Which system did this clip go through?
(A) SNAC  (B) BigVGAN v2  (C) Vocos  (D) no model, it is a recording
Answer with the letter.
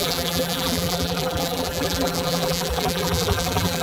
B